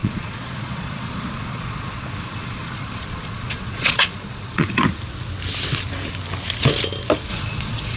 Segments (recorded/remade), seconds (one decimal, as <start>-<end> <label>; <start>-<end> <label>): 0.0-4.8 remade; 4.8-7.3 recorded; 7.3-8.0 remade